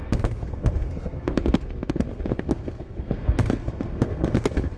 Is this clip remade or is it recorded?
remade